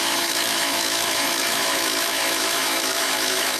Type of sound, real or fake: fake